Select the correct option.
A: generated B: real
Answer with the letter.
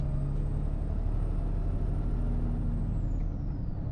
B